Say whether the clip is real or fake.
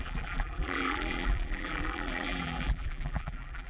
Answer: fake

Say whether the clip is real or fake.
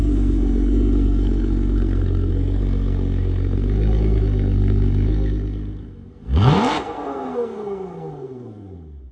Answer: fake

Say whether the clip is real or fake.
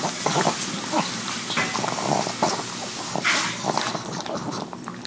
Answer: real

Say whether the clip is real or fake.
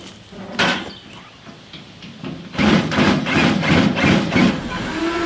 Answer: real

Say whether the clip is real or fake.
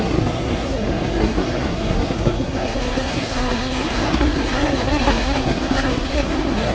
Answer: fake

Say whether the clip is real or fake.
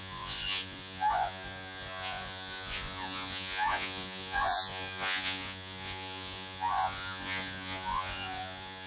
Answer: fake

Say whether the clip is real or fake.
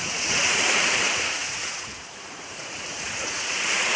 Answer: fake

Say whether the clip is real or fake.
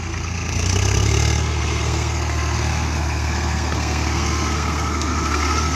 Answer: fake